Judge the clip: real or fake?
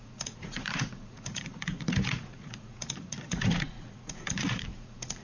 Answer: fake